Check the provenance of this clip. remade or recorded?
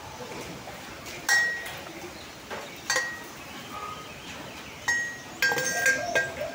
recorded